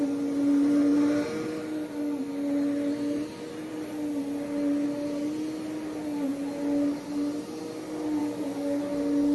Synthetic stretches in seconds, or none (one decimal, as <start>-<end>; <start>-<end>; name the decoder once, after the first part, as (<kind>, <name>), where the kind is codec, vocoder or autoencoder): 8.2-8.8 (codec, DAC)